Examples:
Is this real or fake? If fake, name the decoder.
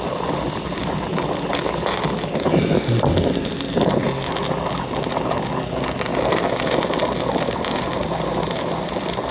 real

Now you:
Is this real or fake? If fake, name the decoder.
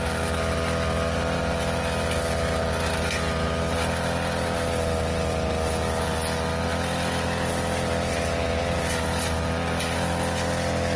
real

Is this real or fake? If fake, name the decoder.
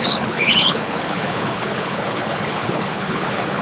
fake, codec, HILCodec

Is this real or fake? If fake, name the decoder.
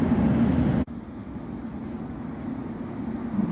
real